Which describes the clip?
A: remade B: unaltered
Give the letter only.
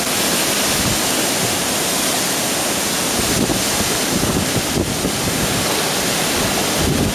B